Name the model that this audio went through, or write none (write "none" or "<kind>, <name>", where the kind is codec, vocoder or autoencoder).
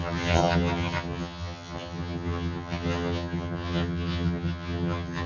vocoder, HiFi-GAN